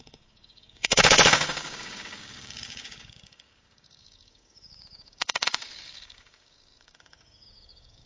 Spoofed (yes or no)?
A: yes